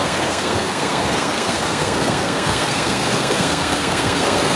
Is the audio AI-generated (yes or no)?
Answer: yes